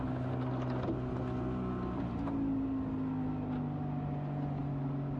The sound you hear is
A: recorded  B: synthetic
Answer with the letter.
A